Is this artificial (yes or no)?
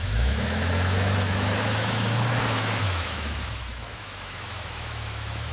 yes